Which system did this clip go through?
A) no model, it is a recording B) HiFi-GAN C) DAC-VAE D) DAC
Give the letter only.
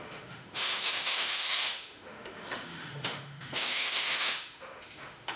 C